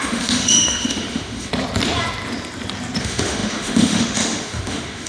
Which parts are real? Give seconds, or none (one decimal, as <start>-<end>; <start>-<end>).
1.5-3.0